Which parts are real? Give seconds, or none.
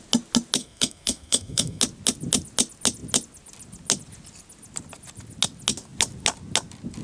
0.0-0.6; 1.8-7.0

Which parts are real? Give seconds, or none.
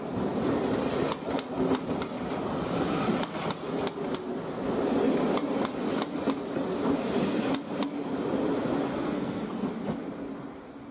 0.0-8.9; 9.7-10.9